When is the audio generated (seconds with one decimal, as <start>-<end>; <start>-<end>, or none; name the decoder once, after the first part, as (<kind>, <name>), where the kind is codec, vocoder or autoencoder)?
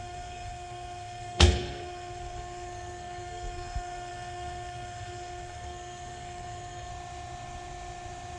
0.0-6.9 (codec, SNAC)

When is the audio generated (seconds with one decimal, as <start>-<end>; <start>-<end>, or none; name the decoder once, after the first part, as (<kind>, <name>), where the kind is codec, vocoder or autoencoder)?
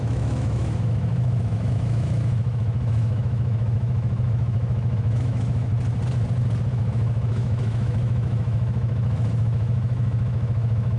0.0-5.7 (autoencoder, DAC-VAE); 6.7-11.0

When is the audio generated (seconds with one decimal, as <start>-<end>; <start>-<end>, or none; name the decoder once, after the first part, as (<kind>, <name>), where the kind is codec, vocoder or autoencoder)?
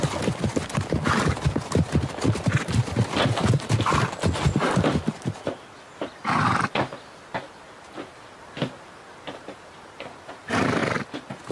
none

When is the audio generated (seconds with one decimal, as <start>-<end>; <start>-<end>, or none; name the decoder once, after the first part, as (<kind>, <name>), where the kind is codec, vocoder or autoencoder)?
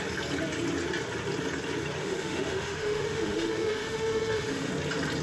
2.0-4.7 (autoencoder, DAC-VAE)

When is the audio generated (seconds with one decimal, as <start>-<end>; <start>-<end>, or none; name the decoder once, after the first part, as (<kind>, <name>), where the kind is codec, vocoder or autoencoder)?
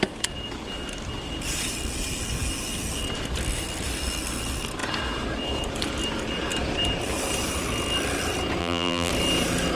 8.6-9.1 (vocoder, BigVGAN v2)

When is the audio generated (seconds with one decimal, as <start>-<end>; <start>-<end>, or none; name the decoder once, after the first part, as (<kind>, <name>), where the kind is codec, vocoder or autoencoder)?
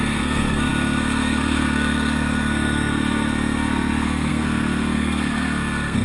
0.0-6.0 (codec, SNAC)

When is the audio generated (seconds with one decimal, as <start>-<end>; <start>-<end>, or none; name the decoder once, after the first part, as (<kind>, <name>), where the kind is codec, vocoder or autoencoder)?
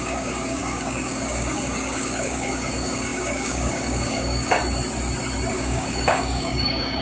0.0-4.6 (codec, DAC); 5.5-7.0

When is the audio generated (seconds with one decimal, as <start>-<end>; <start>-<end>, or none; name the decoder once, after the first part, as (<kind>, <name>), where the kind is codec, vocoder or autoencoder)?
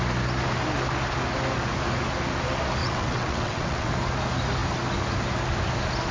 2.8-3.9 (vocoder, WaveNeXt)